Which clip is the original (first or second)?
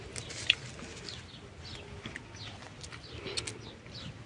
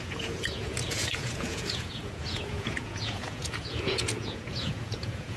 first